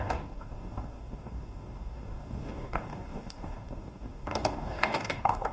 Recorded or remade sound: remade